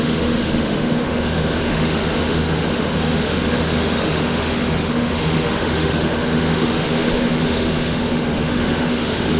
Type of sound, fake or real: fake